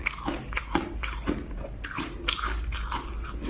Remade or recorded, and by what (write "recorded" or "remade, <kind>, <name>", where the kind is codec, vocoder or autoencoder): recorded